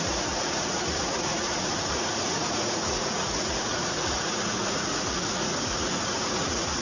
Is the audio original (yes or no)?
no